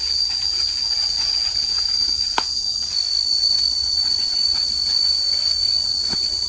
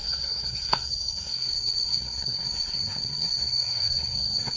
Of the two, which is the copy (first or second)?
second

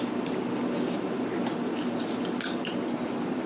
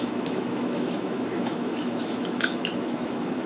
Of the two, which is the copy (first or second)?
second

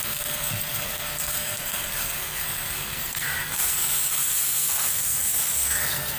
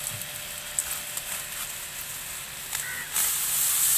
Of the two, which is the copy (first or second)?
first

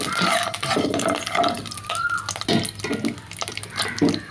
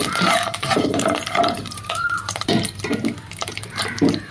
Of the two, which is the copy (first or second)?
second